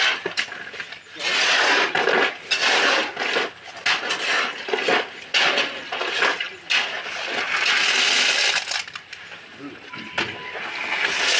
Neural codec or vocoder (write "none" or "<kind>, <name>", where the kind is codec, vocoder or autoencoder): none